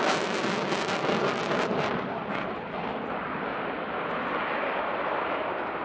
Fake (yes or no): no